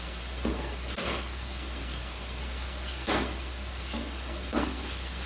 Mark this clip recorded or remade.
remade